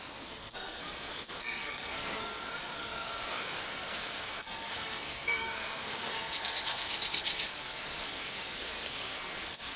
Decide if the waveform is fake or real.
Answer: fake